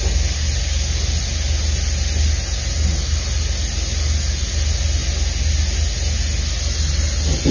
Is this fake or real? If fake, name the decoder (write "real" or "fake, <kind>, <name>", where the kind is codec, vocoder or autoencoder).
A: real